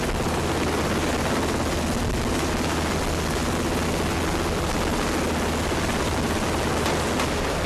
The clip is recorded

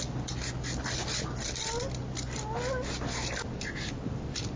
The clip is recorded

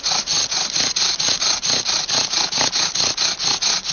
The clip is recorded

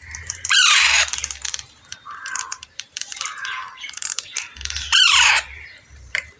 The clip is remade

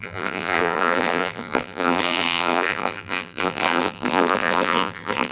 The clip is remade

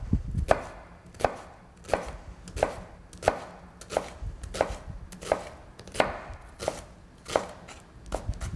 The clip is recorded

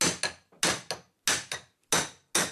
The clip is recorded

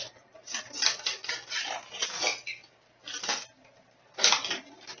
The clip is recorded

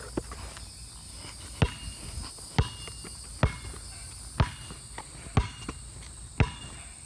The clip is recorded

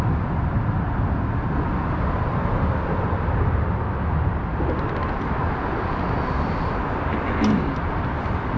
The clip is recorded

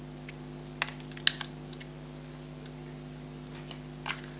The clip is recorded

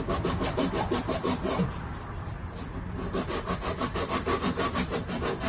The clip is remade